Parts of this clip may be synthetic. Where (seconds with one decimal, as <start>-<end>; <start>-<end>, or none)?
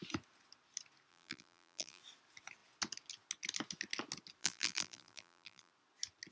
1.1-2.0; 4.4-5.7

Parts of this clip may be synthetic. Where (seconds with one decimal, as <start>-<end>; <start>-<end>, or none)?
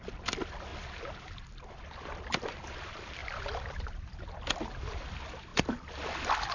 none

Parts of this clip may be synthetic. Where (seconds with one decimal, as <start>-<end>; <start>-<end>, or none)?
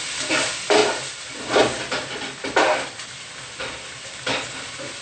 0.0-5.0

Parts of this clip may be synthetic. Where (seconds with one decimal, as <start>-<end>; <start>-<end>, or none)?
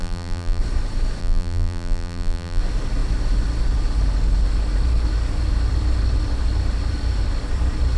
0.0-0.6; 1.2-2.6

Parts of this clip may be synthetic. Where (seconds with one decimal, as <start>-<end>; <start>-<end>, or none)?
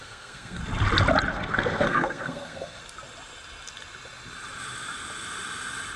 0.0-0.6; 1.3-2.8